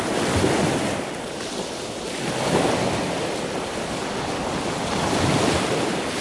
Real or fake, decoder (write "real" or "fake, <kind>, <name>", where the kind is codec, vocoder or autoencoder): real